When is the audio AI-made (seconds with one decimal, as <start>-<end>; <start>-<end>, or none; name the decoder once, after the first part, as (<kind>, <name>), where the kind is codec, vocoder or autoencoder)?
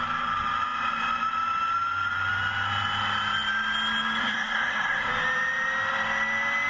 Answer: 4.2-5.1 (codec, SNAC)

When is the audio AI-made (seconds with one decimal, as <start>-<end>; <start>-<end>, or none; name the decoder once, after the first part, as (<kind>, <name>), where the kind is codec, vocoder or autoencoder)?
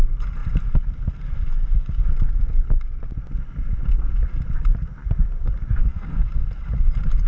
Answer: 5.8-6.3 (codec, SNAC)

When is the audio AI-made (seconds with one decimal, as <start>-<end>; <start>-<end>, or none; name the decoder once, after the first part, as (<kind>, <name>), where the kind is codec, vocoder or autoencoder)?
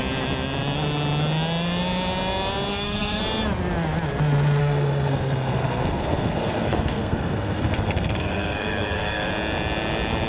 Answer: 2.7-3.2 (codec, SNAC); 4.6-9.3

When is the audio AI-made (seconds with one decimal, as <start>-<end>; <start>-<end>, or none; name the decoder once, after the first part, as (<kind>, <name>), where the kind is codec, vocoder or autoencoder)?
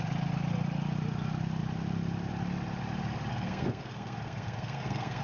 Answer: 3.3-5.2 (codec, SNAC)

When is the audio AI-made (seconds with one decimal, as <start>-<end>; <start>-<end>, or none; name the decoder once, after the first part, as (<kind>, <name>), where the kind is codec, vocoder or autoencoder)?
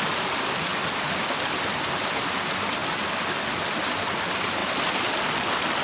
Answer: none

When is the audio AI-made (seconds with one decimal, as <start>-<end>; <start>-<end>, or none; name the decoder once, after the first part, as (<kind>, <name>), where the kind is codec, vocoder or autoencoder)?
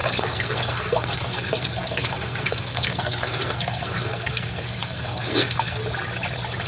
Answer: 0.0-5.8 (codec, SNAC)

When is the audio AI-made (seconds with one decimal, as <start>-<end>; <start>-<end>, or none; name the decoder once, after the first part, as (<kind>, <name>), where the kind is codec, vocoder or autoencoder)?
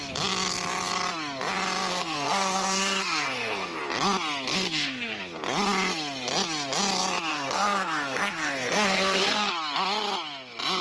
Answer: 1.9-3.8 (codec, SNAC); 4.5-5.2; 7.3-9.5